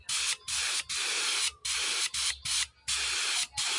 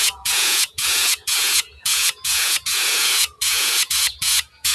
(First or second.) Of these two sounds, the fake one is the second